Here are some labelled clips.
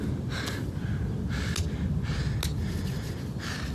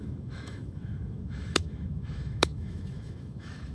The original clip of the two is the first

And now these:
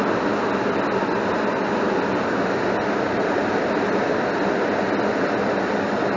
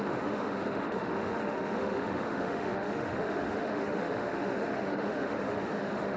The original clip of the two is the first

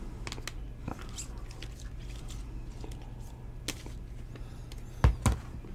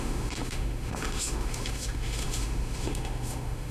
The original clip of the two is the first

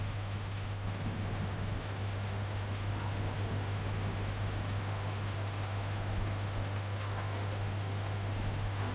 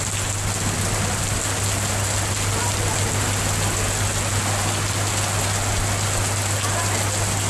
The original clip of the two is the second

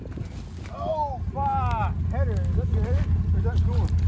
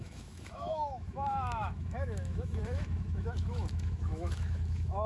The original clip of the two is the first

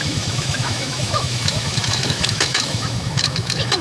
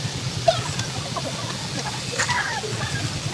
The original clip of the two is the second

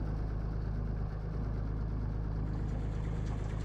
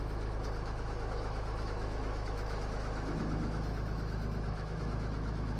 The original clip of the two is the first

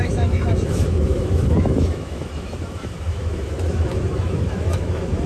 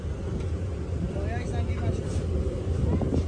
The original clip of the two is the second